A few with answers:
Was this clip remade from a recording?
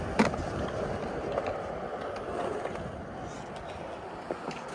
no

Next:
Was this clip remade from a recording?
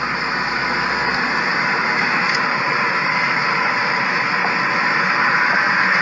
no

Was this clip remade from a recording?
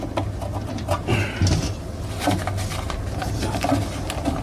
no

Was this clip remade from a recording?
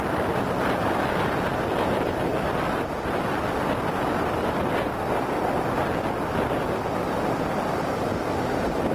no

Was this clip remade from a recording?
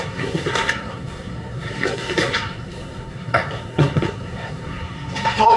yes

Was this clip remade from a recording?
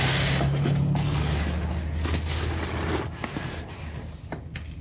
no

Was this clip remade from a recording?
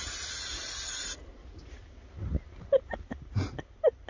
no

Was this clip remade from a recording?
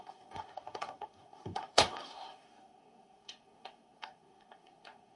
yes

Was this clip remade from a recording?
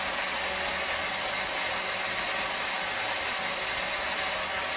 no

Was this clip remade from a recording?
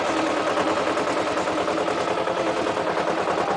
no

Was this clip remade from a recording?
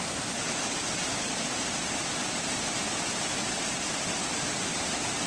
no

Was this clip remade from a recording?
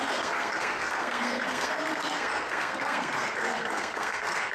yes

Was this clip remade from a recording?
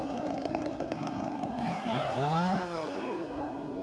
yes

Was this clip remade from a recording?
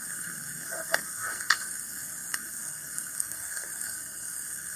yes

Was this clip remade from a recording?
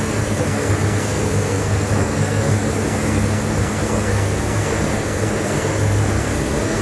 yes